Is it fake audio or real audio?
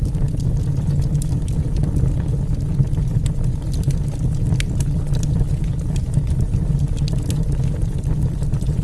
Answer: real